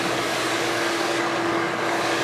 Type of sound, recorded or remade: remade